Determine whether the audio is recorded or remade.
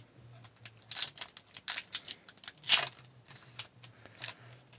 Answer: recorded